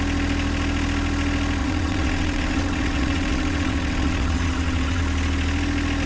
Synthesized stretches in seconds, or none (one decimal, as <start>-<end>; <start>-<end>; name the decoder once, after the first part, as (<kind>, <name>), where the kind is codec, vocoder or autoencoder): 1.6-5.0 (vocoder, WaveNeXt)